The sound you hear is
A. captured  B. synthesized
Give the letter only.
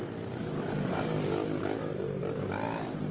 A